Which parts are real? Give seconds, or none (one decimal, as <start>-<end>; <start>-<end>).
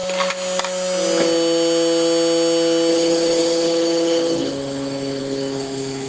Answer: 0.0-2.9